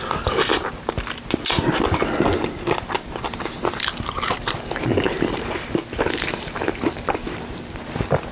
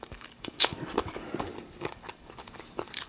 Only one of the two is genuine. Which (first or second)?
first